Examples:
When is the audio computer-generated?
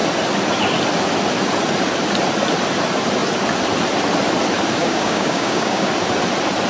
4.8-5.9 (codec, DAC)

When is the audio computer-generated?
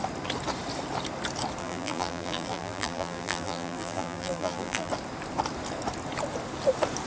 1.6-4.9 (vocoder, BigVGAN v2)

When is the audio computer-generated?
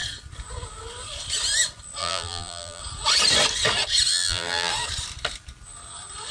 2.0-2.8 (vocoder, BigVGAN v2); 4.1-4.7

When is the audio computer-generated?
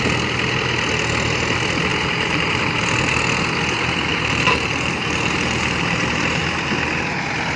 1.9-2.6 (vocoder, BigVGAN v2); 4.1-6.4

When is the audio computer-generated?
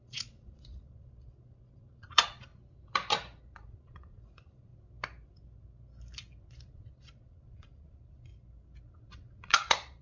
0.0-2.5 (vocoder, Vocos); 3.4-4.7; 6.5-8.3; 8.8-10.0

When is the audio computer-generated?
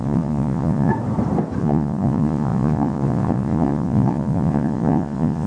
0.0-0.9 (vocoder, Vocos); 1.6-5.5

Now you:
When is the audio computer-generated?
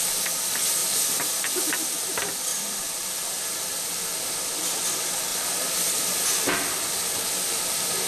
0.8-1.6 (vocoder, BigVGAN v2); 2.5-3.9; 5.3-5.8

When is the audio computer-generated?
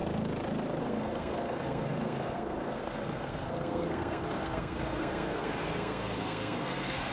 0.8-7.1 (codec, SNAC)